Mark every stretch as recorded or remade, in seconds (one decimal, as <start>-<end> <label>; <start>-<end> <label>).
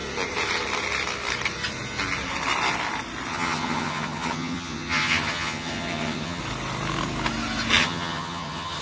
0.0-3.3 recorded; 3.3-6.4 remade; 6.4-7.8 recorded; 7.8-8.8 remade